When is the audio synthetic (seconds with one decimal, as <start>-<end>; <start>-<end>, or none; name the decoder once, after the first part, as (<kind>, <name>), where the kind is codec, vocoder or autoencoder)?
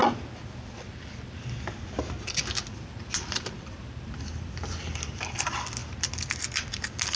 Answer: 2.6-5.8 (vocoder, BigVGAN v2); 6.4-7.2